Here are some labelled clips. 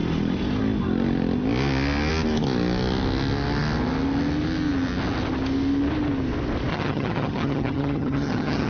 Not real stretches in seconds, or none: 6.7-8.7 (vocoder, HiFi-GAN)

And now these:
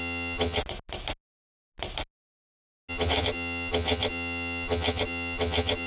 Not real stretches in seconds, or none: 0.0-0.6 (vocoder, HiFi-GAN); 2.9-5.9

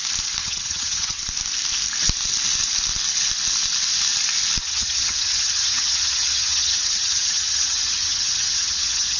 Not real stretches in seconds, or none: 0.4-1.2 (vocoder, HiFi-GAN); 4.6-9.2

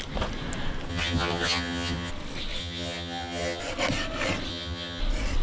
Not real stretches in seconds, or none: 0.9-2.1 (vocoder, HiFi-GAN); 2.6-3.6; 4.5-5.0

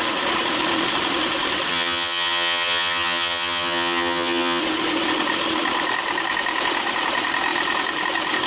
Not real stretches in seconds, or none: 1.7-4.6 (vocoder, HiFi-GAN)

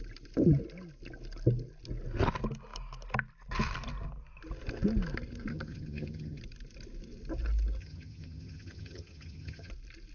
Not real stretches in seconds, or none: 5.5-6.4 (vocoder, HiFi-GAN); 7.8-9.7

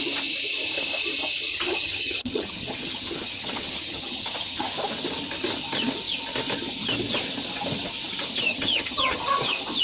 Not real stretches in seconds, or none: 1.5-4.7 (vocoder, HiFi-GAN); 8.5-9.3

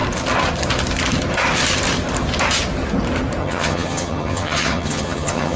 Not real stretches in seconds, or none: 3.4-5.6 (vocoder, HiFi-GAN)